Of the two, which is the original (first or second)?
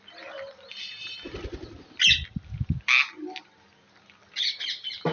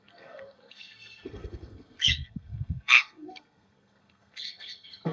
first